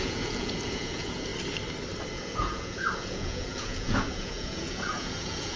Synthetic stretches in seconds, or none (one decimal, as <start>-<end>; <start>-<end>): 0.0-1.3; 2.1-5.6